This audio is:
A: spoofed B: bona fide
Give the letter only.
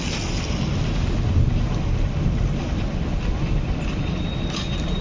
B